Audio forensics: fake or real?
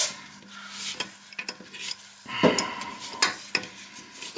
real